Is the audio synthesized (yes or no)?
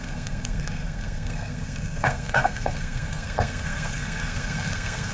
yes